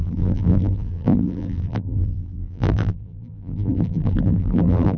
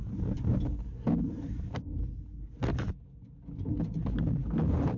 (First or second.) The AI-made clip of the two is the first